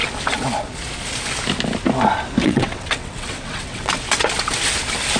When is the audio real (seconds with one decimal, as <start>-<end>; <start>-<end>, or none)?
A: 0.0-2.4; 4.0-5.2